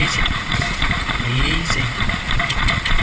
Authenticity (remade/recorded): remade